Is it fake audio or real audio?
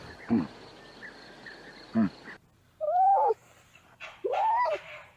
real